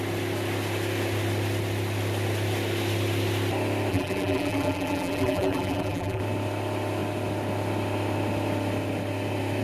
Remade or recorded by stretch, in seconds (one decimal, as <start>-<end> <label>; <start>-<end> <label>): 0.0-3.9 recorded; 3.9-6.2 remade; 6.2-9.6 recorded